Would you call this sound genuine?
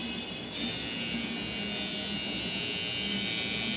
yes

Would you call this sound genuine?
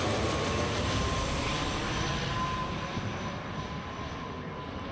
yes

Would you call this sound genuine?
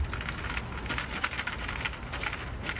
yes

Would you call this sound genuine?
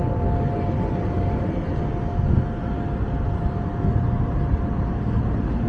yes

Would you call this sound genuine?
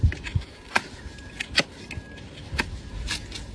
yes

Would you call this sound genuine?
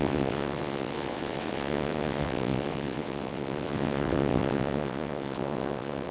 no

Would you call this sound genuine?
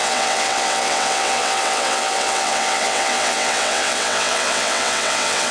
no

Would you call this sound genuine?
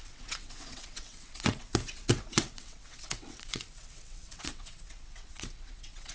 no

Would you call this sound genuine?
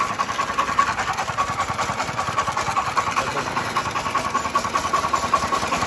yes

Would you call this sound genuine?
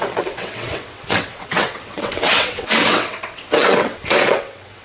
no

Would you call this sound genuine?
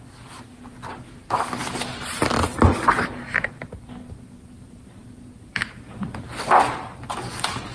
yes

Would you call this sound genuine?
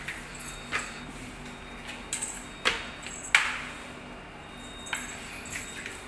yes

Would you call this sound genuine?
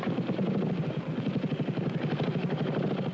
yes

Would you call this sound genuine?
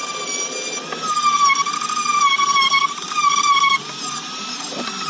yes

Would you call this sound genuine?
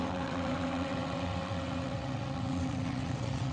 no